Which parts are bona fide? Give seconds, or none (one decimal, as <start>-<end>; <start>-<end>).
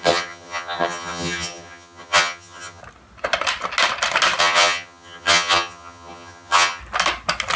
2.8-4.4; 6.8-7.6